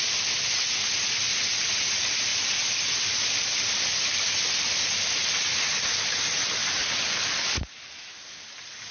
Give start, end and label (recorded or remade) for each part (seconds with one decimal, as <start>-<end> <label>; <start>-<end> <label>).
0.0-8.9 recorded